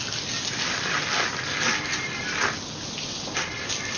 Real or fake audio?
real